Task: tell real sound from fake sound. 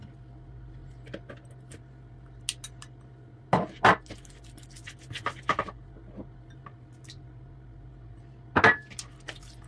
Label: real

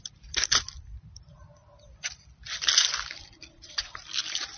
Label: real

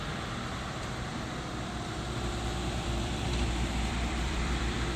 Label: fake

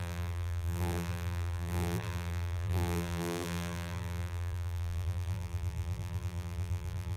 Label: fake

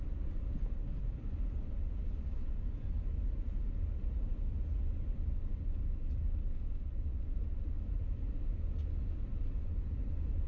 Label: real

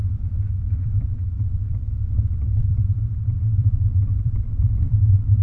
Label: fake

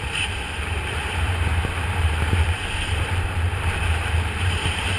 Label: fake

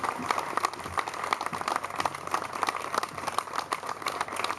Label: real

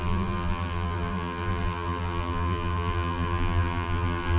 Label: fake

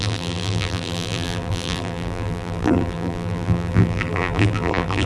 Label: fake